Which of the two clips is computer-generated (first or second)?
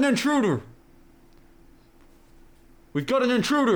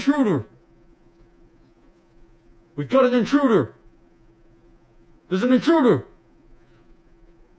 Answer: second